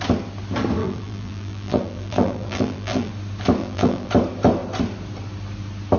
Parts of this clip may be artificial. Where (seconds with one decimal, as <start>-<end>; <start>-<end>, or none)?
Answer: 0.8-3.1; 3.6-4.1